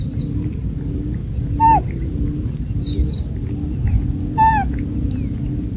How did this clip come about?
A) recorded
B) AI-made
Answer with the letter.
A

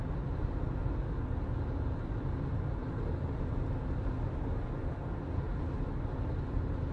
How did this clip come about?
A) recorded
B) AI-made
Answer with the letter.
A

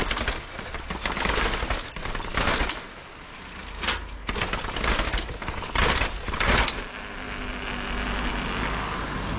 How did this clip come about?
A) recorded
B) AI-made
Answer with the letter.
A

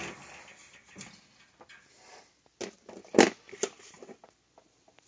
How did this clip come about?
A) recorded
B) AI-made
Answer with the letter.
A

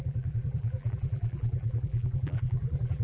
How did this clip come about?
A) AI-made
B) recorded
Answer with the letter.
A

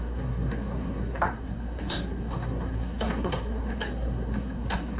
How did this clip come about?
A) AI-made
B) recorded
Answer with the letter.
A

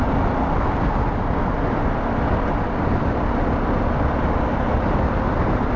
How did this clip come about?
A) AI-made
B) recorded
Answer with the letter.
B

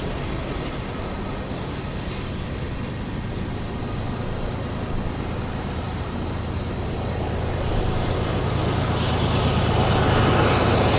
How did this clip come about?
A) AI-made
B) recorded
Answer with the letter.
B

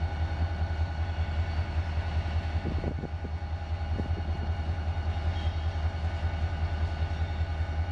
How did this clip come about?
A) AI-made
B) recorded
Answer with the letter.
B